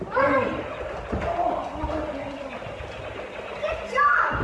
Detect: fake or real real